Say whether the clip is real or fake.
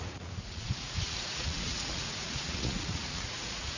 fake